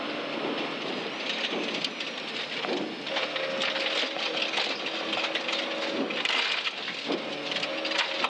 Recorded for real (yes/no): yes